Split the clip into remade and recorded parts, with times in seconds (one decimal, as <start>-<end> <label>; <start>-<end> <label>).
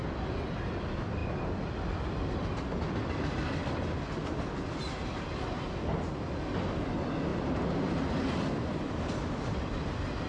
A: 0.0-10.3 recorded